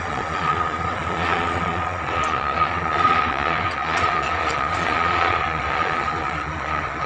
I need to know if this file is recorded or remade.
remade